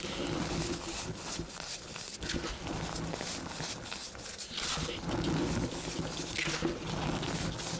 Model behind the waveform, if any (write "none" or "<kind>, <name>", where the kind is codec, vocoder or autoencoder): none